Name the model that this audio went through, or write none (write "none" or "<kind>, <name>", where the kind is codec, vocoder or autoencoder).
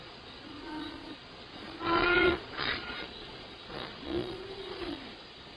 vocoder, Vocos